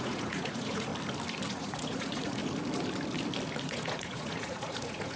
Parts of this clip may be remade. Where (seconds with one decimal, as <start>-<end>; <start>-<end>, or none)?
0.0-0.9; 1.5-2.4; 3.6-5.2

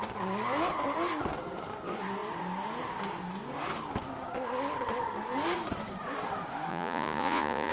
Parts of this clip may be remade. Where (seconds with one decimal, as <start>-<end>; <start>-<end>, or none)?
6.7-7.7

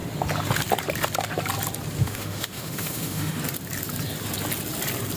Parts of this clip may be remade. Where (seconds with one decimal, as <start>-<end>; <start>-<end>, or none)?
2.0-3.4

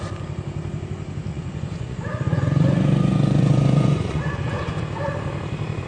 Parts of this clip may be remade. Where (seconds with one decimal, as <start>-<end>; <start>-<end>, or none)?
1.3-4.8